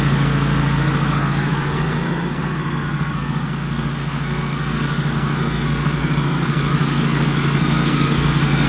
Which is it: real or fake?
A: fake